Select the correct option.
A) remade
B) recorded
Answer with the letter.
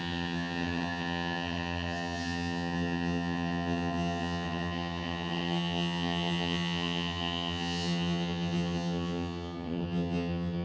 A